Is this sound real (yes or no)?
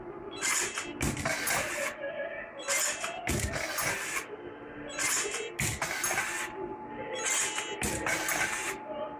yes